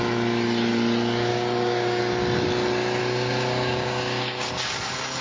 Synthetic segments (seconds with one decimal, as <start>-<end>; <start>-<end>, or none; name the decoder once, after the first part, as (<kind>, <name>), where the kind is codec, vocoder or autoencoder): 1.3-2.0 (codec, DAC); 3.0-4.5